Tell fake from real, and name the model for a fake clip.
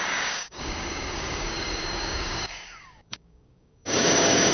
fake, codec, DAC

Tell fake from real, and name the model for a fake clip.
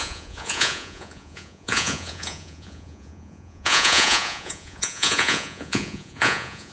fake, vocoder, Vocos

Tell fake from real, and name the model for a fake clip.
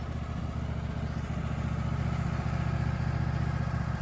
real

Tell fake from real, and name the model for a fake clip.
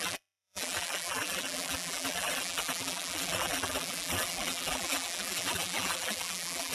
fake, vocoder, BigVGAN v2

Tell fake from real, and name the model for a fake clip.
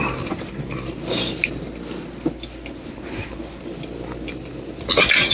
real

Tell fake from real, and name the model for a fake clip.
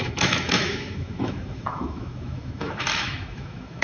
fake, autoencoder, DAC-VAE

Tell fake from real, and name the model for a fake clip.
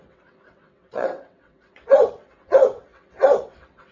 fake, vocoder, WaveNeXt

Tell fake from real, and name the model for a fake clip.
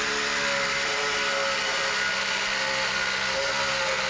real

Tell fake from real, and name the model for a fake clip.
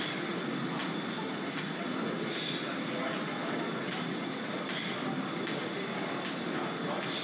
real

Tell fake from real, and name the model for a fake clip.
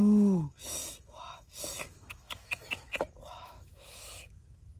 fake, autoencoder, DAC-VAE